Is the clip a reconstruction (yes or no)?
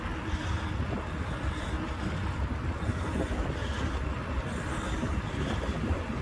no